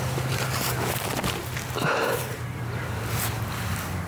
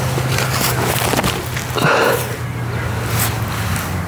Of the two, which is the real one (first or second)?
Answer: second